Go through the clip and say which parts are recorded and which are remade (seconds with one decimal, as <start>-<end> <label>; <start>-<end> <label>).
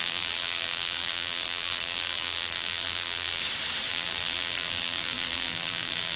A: 0.0-3.4 remade; 3.4-3.9 recorded; 3.9-6.2 remade